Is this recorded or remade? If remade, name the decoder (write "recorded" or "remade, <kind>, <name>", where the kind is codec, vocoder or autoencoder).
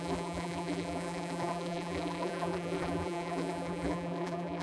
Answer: remade, vocoder, BigVGAN v2